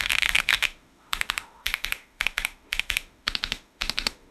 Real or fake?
fake